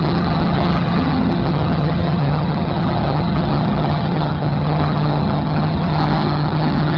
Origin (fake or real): fake